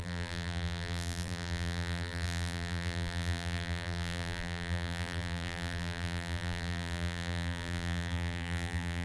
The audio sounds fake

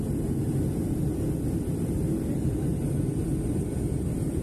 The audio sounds real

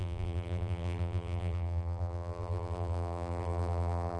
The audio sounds fake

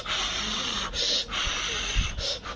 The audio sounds real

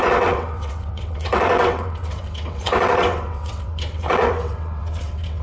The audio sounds fake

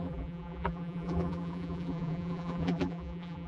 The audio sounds fake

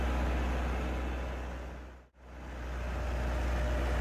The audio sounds real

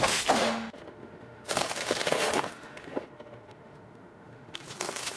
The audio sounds fake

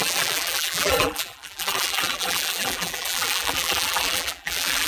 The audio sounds fake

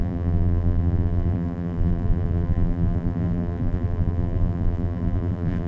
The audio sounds fake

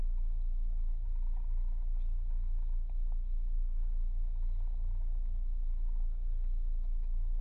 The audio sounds real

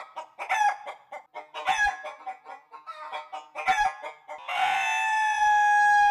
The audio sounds real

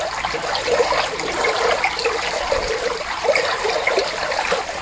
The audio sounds real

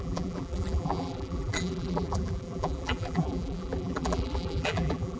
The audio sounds fake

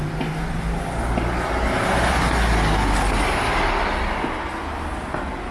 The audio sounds real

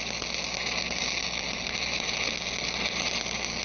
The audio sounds real